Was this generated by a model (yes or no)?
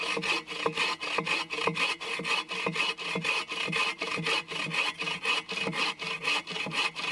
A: no